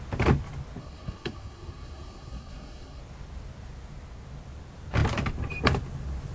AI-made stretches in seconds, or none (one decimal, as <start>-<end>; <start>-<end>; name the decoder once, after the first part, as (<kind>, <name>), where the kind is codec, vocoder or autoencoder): 0.8-3.0 (codec, SNAC)